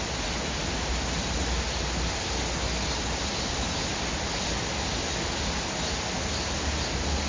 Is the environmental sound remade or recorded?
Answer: recorded